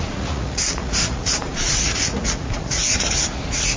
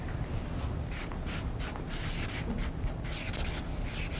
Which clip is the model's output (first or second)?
first